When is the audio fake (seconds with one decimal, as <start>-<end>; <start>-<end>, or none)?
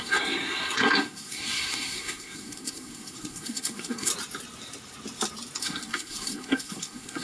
0.0-4.1; 5.6-7.2